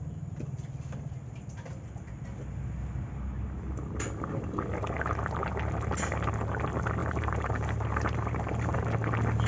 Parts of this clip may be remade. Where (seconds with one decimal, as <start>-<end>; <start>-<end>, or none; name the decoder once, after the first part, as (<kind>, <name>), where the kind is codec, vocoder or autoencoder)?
7.0-8.8 (vocoder, BigVGAN v2)